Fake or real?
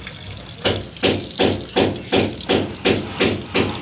real